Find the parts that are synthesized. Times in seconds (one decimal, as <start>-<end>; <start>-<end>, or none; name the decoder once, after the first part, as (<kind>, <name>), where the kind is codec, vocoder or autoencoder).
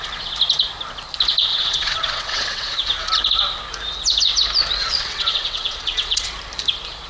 1.5-3.1 (vocoder, WaveNeXt); 4.8-6.3